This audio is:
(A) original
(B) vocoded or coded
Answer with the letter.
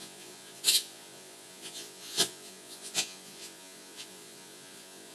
B